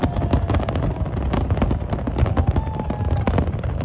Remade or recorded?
recorded